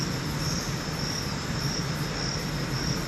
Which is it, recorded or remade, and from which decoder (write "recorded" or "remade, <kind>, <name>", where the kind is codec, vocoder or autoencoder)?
recorded